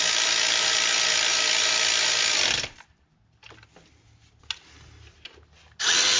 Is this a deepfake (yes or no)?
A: no